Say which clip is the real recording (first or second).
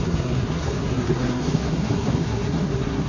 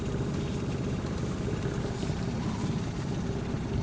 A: second